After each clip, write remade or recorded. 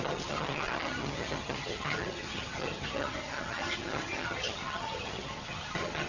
remade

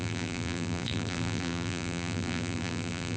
remade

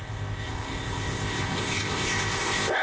remade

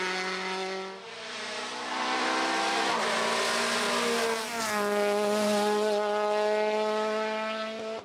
recorded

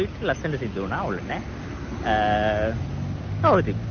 recorded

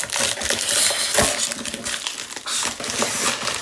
recorded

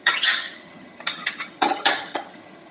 remade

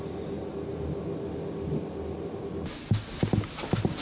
recorded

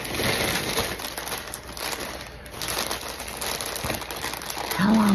recorded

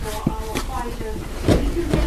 recorded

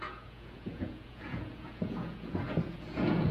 remade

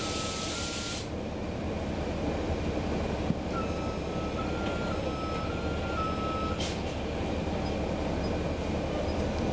recorded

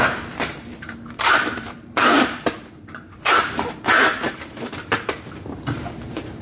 remade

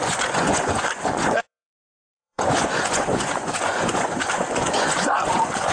remade